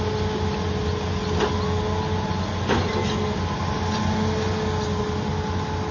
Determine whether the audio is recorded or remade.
recorded